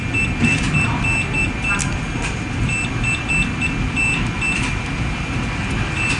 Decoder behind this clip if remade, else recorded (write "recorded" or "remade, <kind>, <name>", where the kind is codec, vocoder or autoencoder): recorded